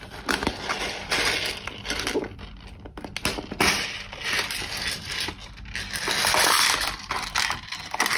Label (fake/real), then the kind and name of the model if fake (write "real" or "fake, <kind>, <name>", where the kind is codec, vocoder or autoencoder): real